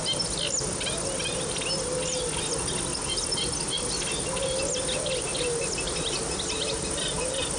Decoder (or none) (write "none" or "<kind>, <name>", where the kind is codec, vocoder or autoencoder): none